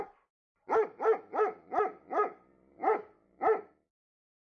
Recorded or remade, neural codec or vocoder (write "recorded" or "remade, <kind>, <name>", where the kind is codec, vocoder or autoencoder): recorded